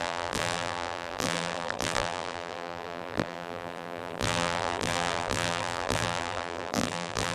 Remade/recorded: remade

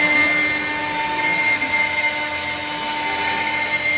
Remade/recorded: recorded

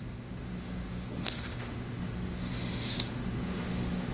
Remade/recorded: remade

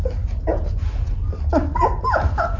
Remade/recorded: recorded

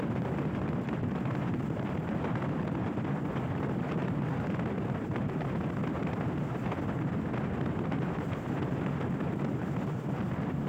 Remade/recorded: recorded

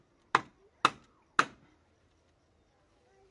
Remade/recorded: recorded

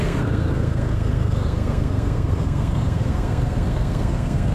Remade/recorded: remade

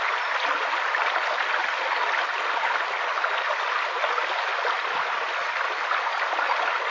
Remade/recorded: recorded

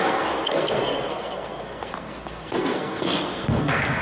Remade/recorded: remade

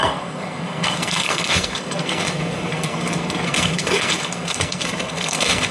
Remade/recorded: remade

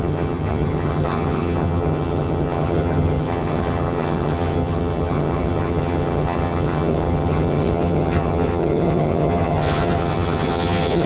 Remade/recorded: remade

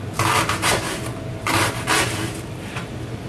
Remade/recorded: recorded